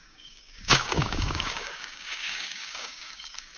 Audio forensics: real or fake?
fake